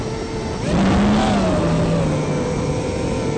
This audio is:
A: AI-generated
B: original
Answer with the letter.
B